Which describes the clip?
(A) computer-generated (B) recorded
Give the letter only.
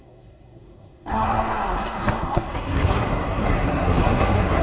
A